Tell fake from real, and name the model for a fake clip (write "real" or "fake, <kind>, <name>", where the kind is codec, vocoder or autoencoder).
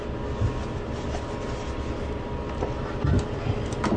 real